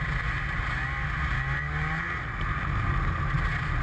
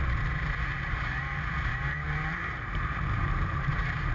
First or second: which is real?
first